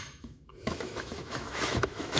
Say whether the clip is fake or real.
fake